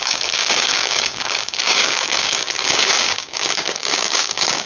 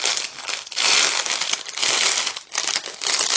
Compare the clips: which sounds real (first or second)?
second